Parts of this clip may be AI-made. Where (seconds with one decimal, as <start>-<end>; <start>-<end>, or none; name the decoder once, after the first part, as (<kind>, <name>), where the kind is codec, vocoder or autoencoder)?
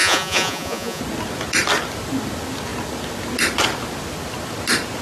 0.0-1.0 (vocoder, Vocos)